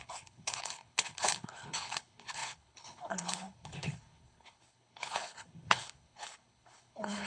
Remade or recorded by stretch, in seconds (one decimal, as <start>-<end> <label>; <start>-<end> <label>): 0.0-7.3 remade